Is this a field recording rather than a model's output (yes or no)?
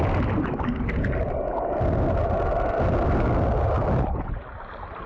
yes